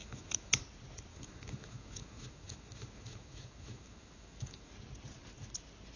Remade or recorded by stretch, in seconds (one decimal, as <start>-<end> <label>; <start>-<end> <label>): 0.0-0.6 remade; 0.6-1.1 recorded; 1.1-4.7 remade; 4.7-6.0 recorded

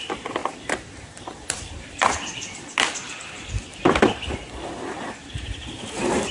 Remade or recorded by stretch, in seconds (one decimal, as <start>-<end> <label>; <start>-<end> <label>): 0.0-0.4 recorded; 0.4-3.5 remade; 3.5-4.3 recorded; 4.3-5.0 remade; 5.0-6.3 recorded

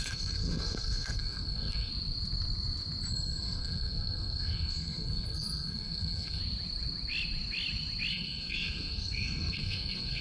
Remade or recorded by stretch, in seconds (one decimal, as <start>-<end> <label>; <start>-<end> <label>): 0.0-1.9 remade; 1.9-3.1 recorded; 3.1-6.4 remade; 6.4-8.1 recorded; 8.1-10.2 remade

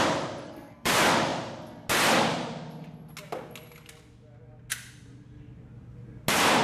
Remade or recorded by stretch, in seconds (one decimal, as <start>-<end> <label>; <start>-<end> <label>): 0.0-0.4 recorded; 0.4-0.9 remade; 0.9-6.6 recorded